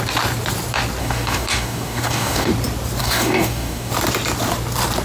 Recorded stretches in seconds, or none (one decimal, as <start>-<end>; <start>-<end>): 0.0-1.0; 2.5-3.0; 3.9-5.0